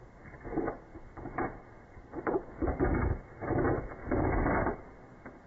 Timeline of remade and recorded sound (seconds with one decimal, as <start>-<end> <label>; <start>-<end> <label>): 0.0-0.9 recorded; 0.9-2.5 remade; 2.5-4.0 recorded; 4.0-4.8 remade; 4.8-5.5 recorded